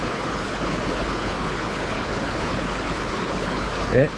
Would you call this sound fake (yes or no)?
yes